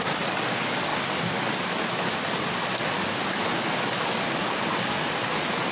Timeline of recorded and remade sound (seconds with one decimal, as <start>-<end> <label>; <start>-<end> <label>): 0.0-5.7 recorded